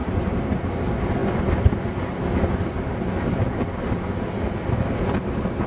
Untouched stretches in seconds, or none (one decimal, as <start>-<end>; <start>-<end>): 0.6-5.7